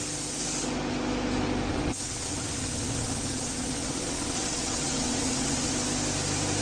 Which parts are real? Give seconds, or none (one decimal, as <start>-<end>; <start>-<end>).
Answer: 0.0-1.7; 5.7-6.6